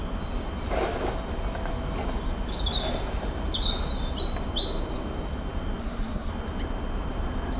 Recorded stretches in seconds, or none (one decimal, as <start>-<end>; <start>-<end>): 0.0-5.8; 6.3-7.6